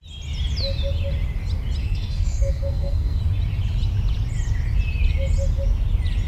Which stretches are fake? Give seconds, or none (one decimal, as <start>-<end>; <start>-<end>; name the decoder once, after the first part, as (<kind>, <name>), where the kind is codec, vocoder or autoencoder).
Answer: 1.8-3.2 (codec, SNAC)